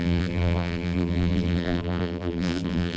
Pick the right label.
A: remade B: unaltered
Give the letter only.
A